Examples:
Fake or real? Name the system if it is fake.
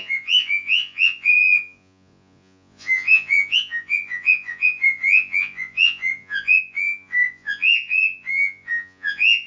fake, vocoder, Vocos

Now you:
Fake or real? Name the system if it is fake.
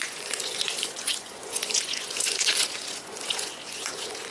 fake, vocoder, Vocos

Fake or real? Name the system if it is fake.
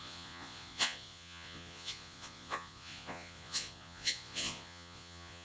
fake, vocoder, Vocos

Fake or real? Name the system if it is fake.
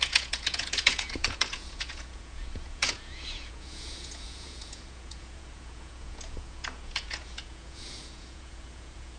fake, vocoder, Vocos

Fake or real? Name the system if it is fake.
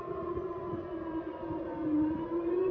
fake, vocoder, Vocos